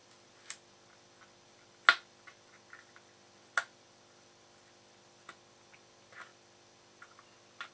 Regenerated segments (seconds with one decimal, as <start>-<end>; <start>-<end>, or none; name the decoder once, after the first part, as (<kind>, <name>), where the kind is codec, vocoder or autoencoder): none